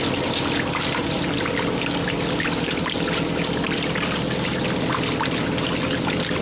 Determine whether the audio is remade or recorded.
recorded